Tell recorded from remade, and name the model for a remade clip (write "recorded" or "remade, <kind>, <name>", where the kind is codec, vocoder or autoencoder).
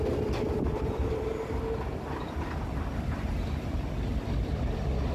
recorded